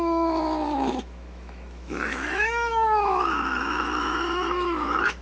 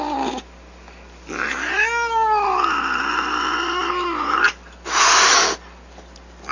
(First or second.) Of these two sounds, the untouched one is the second